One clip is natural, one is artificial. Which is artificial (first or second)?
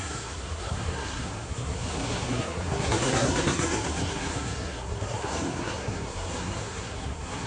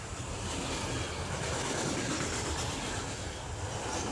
first